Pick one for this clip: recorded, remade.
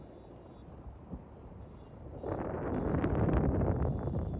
recorded